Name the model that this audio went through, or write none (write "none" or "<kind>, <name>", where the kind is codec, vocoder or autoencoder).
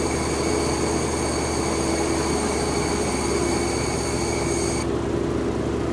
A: none